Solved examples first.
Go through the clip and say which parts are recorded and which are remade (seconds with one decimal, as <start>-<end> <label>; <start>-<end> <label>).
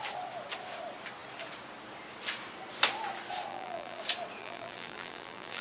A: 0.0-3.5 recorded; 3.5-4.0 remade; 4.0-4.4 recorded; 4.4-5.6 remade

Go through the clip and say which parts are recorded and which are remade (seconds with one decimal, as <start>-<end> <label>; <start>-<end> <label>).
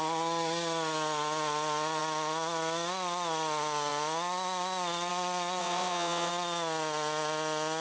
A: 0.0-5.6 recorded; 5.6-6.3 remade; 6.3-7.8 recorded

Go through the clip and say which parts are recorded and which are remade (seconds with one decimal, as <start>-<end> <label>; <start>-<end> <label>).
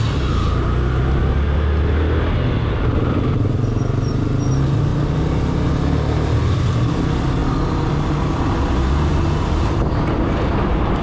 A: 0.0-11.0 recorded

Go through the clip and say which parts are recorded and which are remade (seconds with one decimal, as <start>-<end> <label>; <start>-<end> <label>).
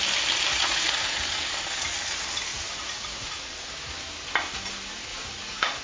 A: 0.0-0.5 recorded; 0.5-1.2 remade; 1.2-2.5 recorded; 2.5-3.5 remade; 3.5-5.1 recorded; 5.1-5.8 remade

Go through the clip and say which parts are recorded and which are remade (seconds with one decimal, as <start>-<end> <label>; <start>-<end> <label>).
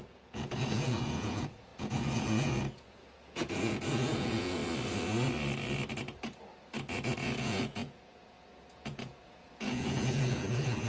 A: 0.0-4.6 remade; 4.6-7.2 recorded; 7.2-10.9 remade